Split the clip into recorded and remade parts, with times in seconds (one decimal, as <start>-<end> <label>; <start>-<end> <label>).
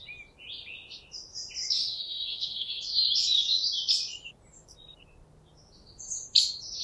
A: 0.0-1.8 recorded; 1.8-2.8 remade; 2.8-6.8 recorded